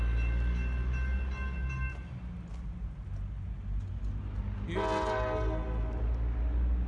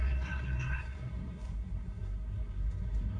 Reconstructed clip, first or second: second